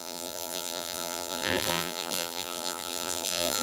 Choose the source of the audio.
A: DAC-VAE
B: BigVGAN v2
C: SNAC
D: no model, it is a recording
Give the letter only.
B